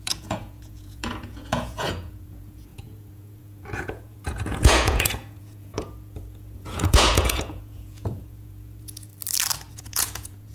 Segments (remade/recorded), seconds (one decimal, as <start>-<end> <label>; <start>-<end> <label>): 0.0-9.1 remade; 9.1-9.7 recorded; 9.7-10.5 remade